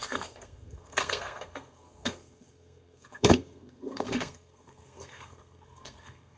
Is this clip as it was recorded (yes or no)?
no